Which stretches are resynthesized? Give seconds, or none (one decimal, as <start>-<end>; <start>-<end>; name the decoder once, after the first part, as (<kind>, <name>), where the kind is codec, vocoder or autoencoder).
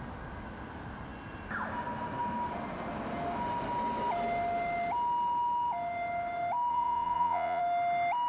6.7-7.6 (vocoder, Vocos)